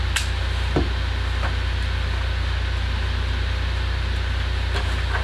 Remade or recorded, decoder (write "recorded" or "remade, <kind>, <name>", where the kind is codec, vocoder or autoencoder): recorded